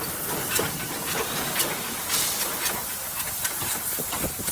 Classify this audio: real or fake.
real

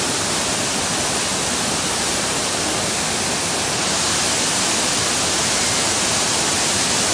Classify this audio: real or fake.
real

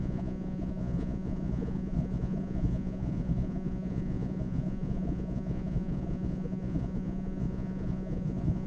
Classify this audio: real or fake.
fake